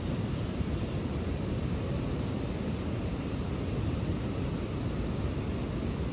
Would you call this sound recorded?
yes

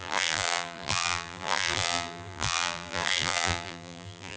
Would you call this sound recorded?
no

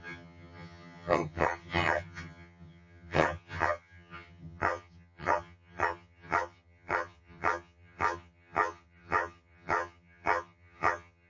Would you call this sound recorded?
no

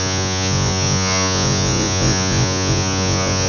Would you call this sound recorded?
no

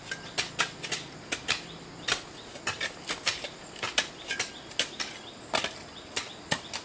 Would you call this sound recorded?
yes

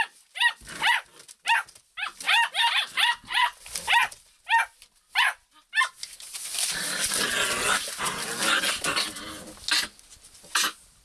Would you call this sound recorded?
yes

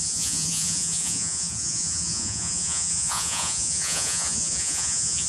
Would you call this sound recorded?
no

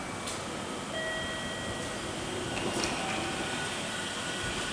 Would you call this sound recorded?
yes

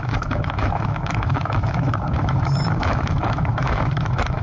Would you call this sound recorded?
no